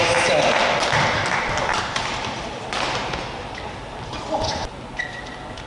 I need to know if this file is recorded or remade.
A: recorded